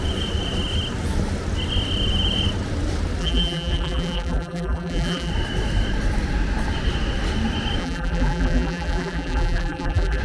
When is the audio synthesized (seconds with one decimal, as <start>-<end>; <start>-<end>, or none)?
3.2-5.3; 7.8-10.2